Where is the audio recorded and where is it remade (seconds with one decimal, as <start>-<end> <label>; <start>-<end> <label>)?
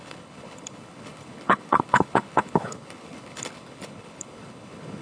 0.0-5.0 remade